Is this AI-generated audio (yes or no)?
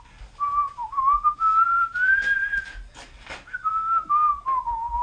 no